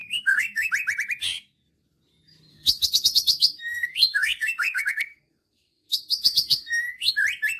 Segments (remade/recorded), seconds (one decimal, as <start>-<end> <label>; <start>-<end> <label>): 0.0-0.7 remade; 0.7-2.5 recorded; 2.5-7.1 remade; 7.1-7.6 recorded